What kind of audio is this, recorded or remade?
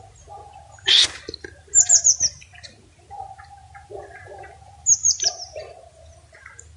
recorded